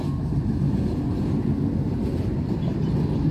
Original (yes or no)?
yes